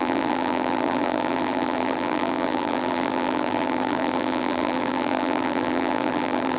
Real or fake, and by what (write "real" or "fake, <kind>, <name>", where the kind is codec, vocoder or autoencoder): fake, vocoder, BigVGAN v2